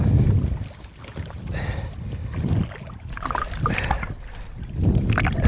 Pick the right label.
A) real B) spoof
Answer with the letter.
A